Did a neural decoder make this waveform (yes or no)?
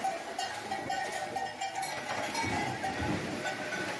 no